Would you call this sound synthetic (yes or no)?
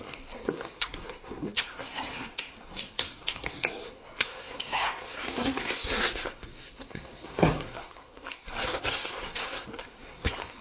yes